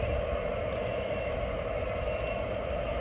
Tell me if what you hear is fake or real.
real